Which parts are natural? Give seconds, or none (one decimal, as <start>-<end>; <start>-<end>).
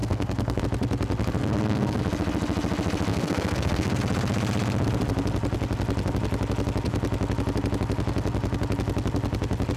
0.6-1.4; 2.0-3.1; 4.0-9.8